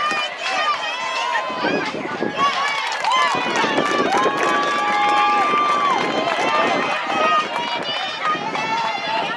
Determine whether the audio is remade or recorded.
recorded